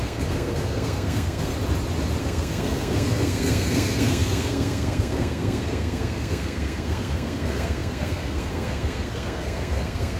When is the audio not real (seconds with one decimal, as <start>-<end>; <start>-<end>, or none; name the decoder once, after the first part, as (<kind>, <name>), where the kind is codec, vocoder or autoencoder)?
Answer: 0.0-1.5 (codec, SNAC); 2.2-10.2